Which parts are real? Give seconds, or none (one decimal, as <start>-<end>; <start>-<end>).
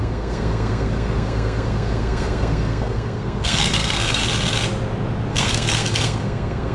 4.2-5.3